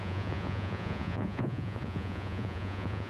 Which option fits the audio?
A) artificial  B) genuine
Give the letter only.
A